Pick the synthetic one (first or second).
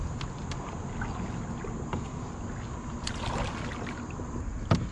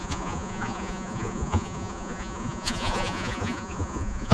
second